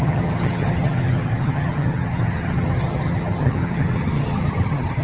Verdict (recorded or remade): remade